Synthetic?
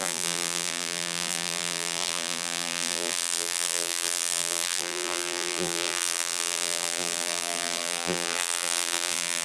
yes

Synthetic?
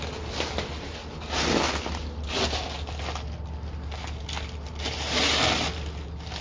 no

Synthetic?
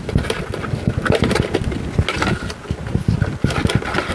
no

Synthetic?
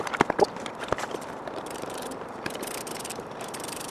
yes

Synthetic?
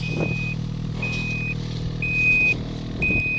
no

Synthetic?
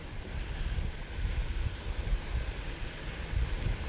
no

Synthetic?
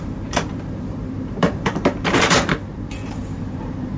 yes